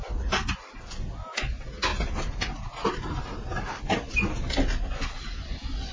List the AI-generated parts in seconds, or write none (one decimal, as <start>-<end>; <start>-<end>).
none